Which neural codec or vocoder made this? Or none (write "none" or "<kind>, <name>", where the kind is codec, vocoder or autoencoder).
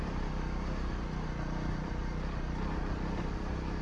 none